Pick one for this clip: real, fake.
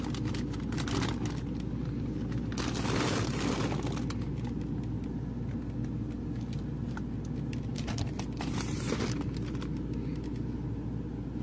real